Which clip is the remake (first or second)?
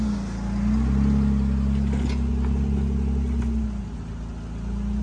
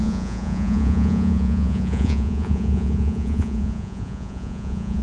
second